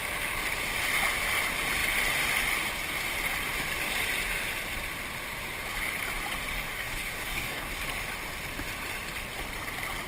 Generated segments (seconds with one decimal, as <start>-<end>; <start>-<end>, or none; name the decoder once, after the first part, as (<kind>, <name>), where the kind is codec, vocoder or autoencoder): 6.5-7.7 (codec, DAC)